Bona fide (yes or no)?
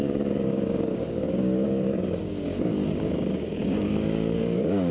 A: no